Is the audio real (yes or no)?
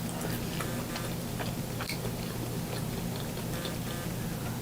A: yes